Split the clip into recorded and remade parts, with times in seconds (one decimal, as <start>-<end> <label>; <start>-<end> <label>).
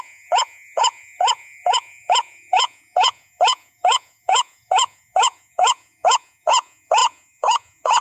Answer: 0.0-8.0 remade